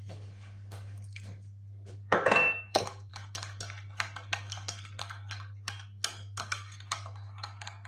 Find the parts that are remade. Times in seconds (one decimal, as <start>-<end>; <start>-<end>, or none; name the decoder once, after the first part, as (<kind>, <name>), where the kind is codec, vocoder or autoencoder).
0.0-7.9 (codec, SNAC)